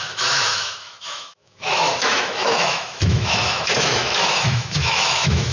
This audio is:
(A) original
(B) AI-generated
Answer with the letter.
B